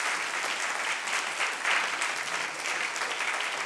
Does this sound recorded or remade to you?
recorded